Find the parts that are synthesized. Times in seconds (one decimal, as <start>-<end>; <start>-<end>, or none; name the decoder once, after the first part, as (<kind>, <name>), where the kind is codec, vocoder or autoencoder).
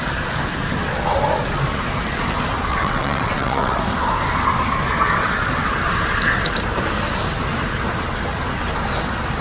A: 2.7-3.8 (vocoder, WaveNeXt)